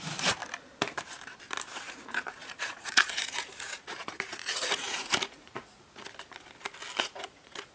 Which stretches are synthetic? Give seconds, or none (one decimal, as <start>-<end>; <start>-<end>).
0.0-0.4; 1.8-6.0; 7.0-7.7